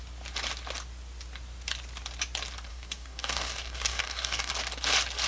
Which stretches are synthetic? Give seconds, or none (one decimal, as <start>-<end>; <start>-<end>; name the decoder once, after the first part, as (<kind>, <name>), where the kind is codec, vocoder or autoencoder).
2.7-4.5 (codec, DAC)